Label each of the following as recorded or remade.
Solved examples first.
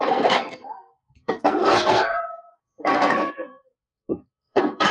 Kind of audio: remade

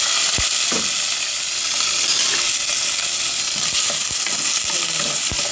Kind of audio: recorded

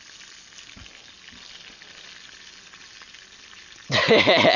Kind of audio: recorded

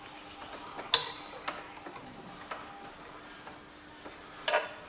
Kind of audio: recorded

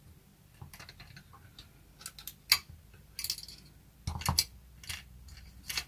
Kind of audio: recorded